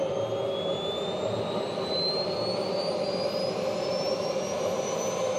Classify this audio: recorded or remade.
recorded